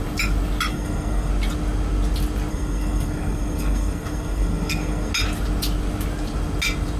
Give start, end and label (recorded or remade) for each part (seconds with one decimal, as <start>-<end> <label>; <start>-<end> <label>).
0.0-0.7 recorded; 0.7-1.3 remade; 1.3-2.5 recorded; 2.5-5.1 remade; 5.1-7.0 recorded